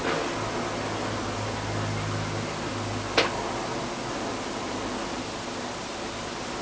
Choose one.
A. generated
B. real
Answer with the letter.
B